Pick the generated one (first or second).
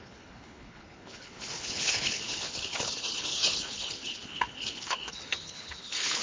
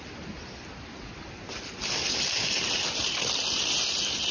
first